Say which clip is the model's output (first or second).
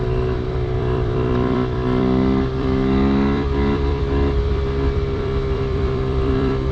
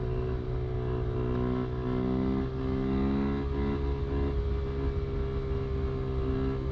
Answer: first